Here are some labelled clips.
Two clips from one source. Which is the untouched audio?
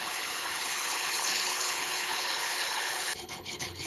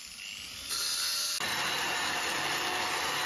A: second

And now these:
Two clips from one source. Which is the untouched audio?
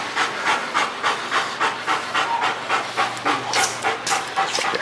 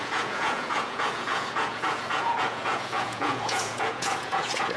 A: first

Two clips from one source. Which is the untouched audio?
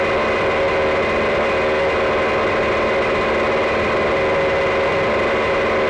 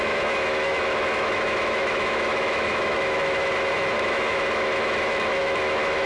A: first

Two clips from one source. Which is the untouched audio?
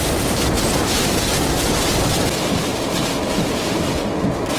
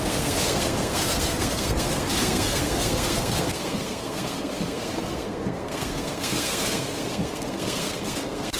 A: first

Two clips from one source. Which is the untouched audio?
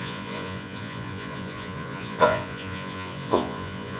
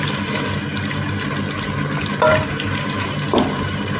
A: second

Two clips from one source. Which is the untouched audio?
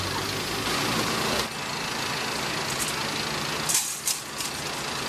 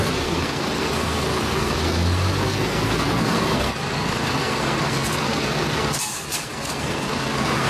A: first